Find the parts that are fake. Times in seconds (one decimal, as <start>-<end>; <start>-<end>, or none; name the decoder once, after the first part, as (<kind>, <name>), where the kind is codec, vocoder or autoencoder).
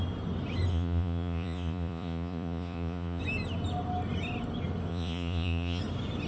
0.7-3.2 (vocoder, Vocos); 4.9-5.8